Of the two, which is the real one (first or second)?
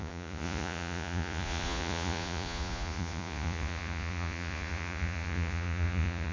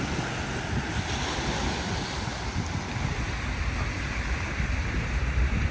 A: second